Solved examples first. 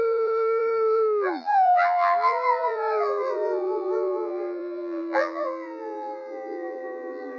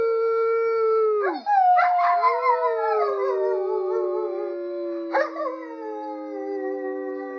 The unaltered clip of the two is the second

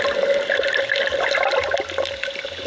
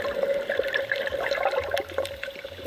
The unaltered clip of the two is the first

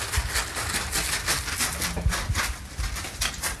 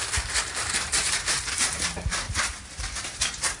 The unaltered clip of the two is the first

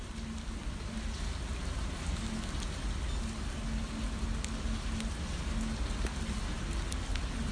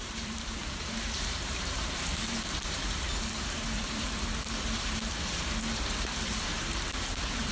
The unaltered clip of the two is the first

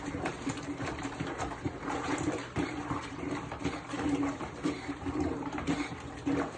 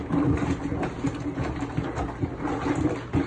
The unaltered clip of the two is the second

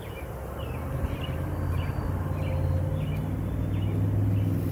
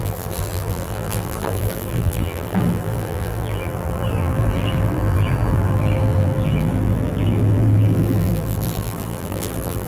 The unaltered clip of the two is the first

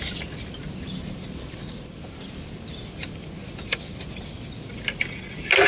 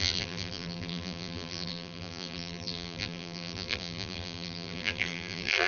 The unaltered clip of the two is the first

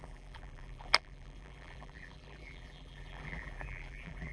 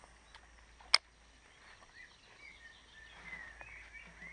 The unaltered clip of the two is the second